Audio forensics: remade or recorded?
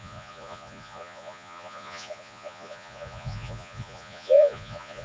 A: remade